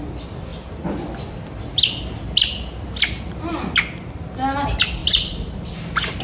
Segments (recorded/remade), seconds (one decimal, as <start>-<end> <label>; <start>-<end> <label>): 0.0-6.2 recorded